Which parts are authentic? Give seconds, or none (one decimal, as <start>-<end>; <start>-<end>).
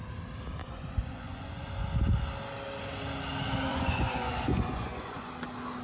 0.0-0.6; 1.9-3.7; 5.3-5.8